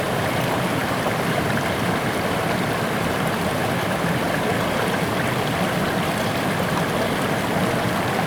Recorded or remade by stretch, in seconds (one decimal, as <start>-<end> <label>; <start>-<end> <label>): 0.0-0.8 recorded; 0.8-1.8 remade; 1.8-8.3 recorded